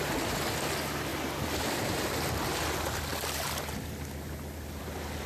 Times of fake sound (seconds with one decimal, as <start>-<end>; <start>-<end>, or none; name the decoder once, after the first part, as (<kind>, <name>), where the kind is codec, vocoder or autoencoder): none